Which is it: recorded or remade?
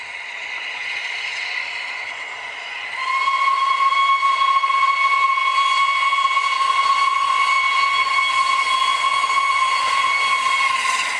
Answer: recorded